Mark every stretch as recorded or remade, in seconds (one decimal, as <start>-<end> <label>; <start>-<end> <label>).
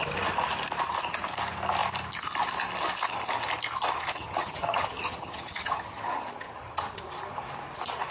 0.0-4.2 recorded; 4.2-7.0 remade; 7.0-8.1 recorded